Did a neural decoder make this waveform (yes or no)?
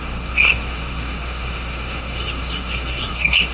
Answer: yes